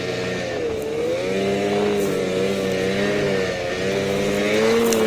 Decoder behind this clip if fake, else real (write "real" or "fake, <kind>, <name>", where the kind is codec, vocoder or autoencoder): real